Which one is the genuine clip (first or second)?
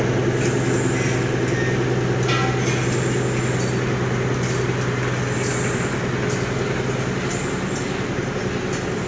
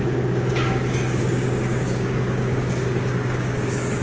first